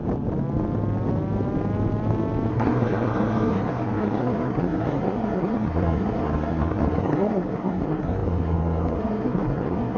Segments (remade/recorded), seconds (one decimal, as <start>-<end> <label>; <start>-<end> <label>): 0.0-2.5 recorded; 2.5-10.0 remade